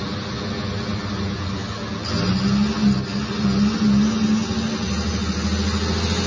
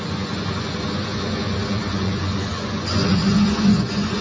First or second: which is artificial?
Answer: second